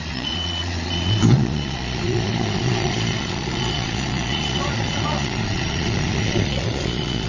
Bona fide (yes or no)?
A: no